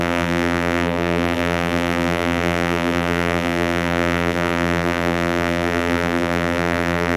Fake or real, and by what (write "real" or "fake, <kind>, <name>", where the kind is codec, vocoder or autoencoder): fake, vocoder, BigVGAN v2